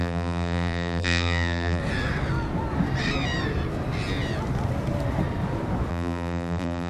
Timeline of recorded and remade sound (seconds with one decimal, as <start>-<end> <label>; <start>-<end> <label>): 0.0-1.8 remade; 1.8-5.9 recorded; 5.9-6.9 remade